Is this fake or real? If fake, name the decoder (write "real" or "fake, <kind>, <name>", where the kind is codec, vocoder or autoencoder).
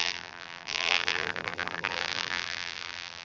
fake, vocoder, BigVGAN v2